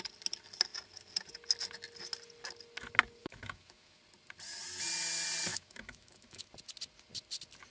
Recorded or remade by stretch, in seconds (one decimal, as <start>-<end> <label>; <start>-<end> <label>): 0.0-3.2 recorded; 3.2-4.0 remade; 4.0-5.5 recorded; 5.5-6.5 remade; 6.5-7.7 recorded